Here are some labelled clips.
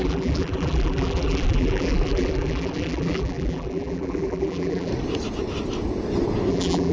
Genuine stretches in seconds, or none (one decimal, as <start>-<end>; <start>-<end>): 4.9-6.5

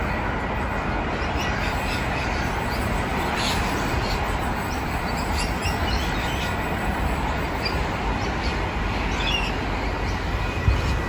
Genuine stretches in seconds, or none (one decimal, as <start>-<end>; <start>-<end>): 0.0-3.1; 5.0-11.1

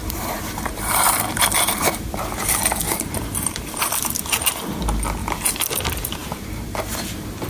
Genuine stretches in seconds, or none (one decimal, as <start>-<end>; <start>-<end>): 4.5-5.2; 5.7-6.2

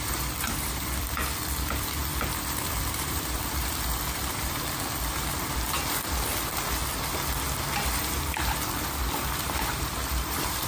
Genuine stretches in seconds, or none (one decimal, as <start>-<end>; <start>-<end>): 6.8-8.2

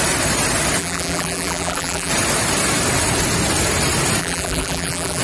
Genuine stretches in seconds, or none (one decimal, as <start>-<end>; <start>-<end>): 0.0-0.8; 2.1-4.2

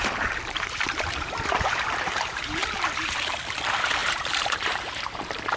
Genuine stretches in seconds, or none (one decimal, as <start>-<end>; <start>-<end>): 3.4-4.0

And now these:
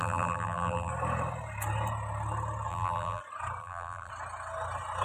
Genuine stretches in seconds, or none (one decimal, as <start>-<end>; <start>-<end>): 0.9-2.7; 3.2-3.6; 4.1-5.0

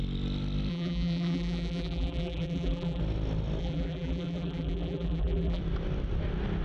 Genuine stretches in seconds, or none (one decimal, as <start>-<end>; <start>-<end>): 0.0-0.7; 3.0-3.6; 5.6-6.6